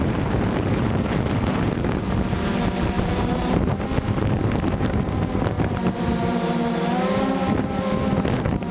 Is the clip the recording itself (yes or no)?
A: no